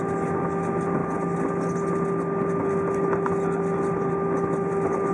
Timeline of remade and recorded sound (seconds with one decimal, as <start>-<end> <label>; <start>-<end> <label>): 0.0-5.1 recorded